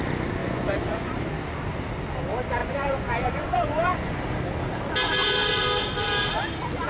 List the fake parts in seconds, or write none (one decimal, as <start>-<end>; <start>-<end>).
0.4-1.1; 2.6-4.2